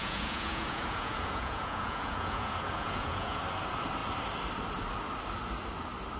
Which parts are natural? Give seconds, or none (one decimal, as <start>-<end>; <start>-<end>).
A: 3.4-6.2